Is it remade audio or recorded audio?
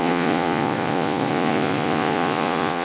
remade